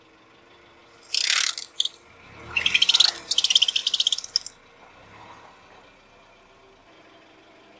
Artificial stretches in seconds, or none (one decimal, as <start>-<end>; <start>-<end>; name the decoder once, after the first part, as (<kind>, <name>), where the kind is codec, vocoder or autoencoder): none